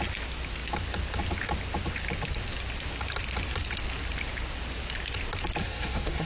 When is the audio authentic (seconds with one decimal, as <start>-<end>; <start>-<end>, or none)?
0.0-5.6